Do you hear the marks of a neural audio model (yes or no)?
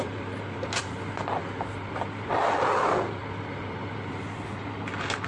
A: no